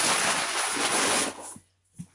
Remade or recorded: remade